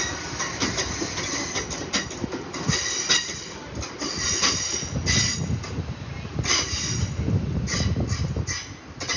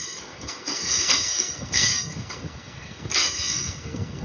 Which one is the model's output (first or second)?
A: second